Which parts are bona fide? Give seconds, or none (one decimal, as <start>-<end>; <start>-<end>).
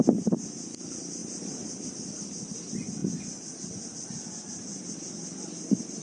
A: 0.0-6.0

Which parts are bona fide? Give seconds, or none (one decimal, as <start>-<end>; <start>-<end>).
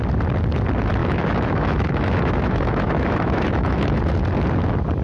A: 0.0-1.0; 4.0-5.0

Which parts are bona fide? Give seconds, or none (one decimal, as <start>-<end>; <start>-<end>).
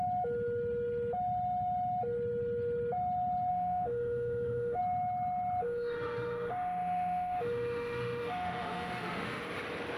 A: 0.0-3.5; 4.8-5.6; 9.4-10.0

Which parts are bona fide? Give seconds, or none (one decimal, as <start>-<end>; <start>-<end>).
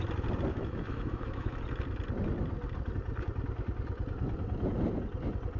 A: 0.0-0.5; 1.6-5.6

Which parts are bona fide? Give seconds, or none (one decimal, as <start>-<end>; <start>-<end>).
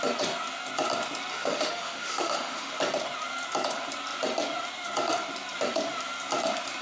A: 0.0-1.3; 2.7-6.8